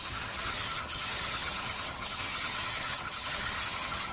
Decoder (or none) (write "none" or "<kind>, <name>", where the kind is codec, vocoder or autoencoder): vocoder, HiFi-GAN